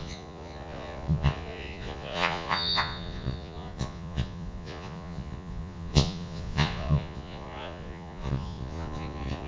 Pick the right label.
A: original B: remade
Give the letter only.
B